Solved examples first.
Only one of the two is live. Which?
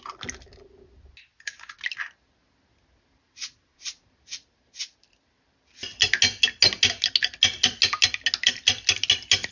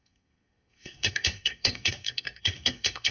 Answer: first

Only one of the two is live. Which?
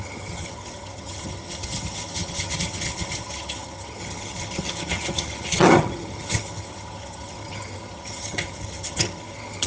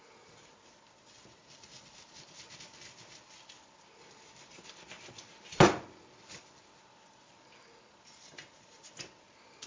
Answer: second